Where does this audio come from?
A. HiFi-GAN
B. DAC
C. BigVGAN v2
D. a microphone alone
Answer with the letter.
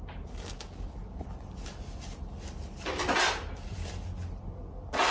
D